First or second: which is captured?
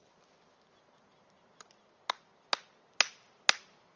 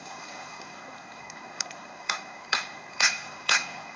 first